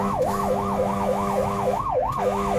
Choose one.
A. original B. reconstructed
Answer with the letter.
B